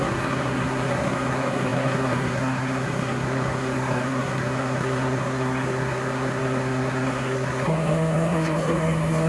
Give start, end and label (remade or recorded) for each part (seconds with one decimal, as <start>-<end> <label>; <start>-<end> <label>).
0.0-9.3 remade